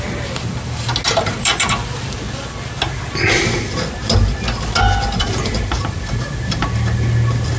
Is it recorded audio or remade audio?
recorded